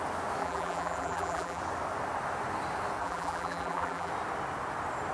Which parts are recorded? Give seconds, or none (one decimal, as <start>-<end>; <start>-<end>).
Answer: 0.0-0.4; 1.6-3.0; 4.1-5.1